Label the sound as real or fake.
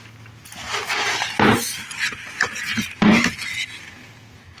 real